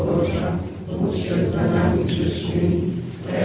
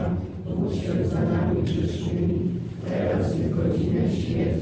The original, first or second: first